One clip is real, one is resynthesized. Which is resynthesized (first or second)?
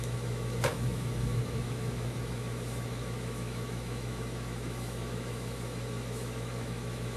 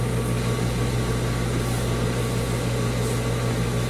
first